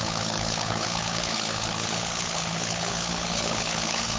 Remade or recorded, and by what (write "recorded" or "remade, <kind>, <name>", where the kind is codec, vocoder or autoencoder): remade, codec, HILCodec